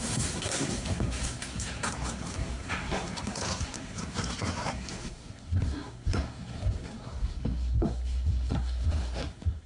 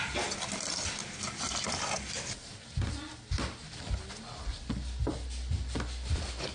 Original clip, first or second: second